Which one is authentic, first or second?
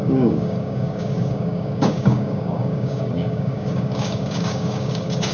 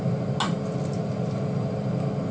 second